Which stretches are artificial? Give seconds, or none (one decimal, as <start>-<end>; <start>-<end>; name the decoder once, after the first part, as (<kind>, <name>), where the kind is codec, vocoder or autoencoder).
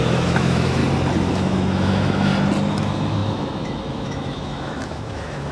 0.0-0.8 (autoencoder, DAC-VAE); 1.3-2.3; 2.8-5.5